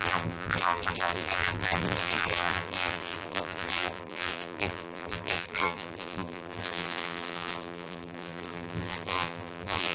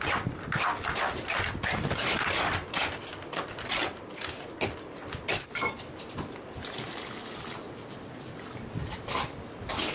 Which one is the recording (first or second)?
second